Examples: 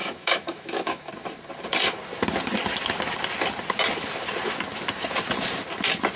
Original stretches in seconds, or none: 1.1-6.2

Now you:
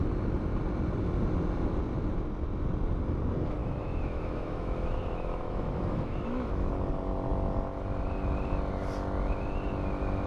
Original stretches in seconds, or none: 0.0-3.6; 6.7-10.3

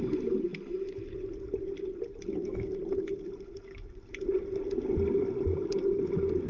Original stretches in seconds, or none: 0.0-6.5

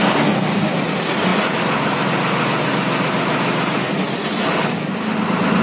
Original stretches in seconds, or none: 0.0-5.6

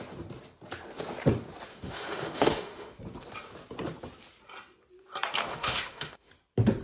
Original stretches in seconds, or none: 0.0-1.7; 3.0-5.5; 6.3-6.8